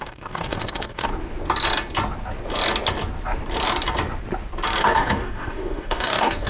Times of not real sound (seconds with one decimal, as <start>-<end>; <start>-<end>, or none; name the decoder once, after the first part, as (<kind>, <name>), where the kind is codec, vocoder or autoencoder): 0.0-1.1 (codec, DAC); 4.8-6.5